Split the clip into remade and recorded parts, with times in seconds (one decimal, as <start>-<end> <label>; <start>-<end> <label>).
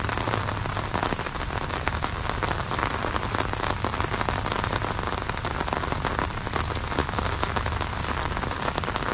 0.0-7.0 recorded; 7.0-7.9 remade; 7.9-9.1 recorded